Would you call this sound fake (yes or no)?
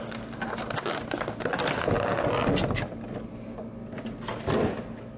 no